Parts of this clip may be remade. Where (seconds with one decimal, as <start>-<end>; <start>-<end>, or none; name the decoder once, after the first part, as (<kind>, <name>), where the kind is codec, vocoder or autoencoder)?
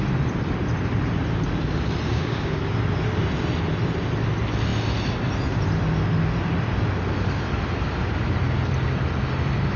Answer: 2.1-2.6 (codec, DAC)